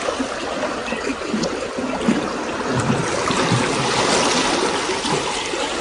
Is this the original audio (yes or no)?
yes